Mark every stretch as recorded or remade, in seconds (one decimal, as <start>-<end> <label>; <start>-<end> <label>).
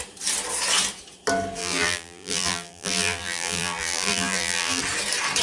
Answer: 0.0-1.6 recorded; 1.6-4.8 remade; 4.8-5.4 recorded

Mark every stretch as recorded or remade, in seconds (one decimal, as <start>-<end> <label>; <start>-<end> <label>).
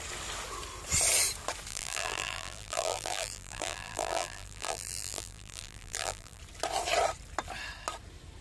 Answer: 0.0-1.7 recorded; 1.7-6.4 remade; 6.4-8.4 recorded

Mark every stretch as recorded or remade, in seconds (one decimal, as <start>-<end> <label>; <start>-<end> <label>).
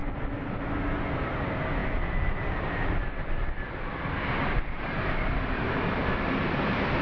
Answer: 0.0-1.8 recorded; 1.8-6.0 remade; 6.0-7.0 recorded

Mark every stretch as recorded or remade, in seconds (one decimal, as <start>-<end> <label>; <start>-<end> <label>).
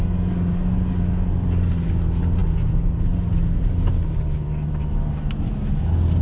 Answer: 0.0-6.2 recorded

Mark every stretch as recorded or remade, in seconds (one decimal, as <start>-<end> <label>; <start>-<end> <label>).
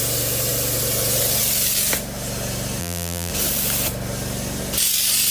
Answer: 0.0-2.8 recorded; 2.8-3.3 remade; 3.3-5.3 recorded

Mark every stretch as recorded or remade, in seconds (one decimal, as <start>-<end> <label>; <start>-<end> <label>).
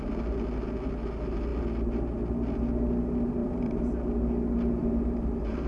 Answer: 0.0-3.4 recorded; 3.4-3.9 remade; 3.9-4.8 recorded; 4.8-5.7 remade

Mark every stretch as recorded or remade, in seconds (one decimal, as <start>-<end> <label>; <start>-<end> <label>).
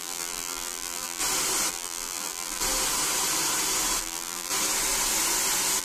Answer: 0.0-1.2 remade; 1.2-1.7 recorded; 1.7-2.6 remade; 2.6-4.0 recorded; 4.0-4.5 remade; 4.5-5.8 recorded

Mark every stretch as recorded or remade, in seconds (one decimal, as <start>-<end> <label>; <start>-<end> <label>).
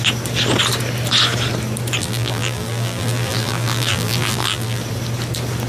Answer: 0.0-2.0 recorded; 2.0-4.8 remade; 4.8-5.7 recorded